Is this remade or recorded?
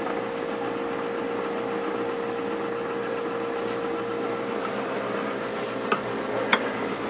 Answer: recorded